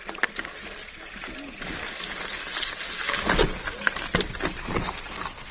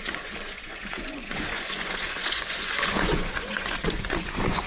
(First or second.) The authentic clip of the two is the first